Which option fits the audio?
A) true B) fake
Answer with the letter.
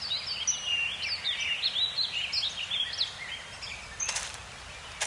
A